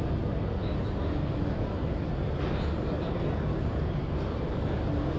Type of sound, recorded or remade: recorded